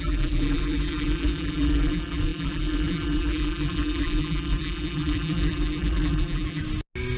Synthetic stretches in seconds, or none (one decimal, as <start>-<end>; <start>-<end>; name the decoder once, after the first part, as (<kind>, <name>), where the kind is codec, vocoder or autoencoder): 0.0-6.6 (vocoder, BigVGAN v2)